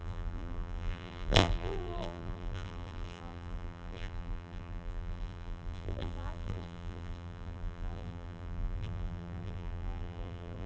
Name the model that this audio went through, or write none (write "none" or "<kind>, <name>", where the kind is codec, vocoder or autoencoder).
vocoder, BigVGAN v2